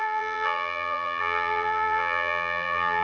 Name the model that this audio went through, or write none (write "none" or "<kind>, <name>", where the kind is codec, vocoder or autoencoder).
vocoder, BigVGAN v2